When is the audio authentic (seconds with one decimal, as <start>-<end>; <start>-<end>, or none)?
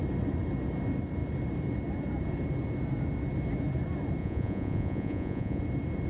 0.0-4.2; 5.6-6.1